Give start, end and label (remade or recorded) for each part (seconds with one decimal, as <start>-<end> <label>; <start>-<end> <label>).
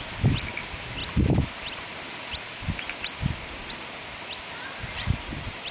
0.0-5.7 recorded